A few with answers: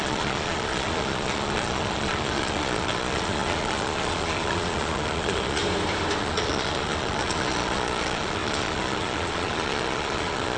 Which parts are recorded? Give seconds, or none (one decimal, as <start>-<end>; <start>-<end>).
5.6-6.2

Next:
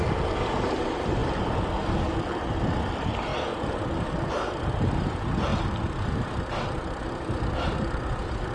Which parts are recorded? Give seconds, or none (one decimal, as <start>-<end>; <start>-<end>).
3.3-4.3; 5.5-6.1

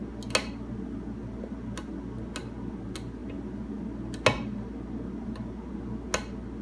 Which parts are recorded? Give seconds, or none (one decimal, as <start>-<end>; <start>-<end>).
0.0-6.6

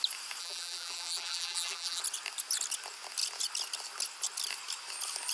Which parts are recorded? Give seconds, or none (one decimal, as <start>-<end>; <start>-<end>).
0.0-0.4; 2.0-5.3

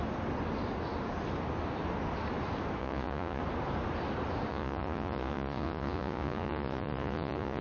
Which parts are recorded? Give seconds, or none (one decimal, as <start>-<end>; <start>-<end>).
0.0-2.8; 3.4-4.5

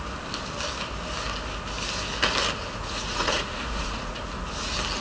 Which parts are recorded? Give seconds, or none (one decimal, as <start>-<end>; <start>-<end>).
0.0-2.7; 4.2-5.0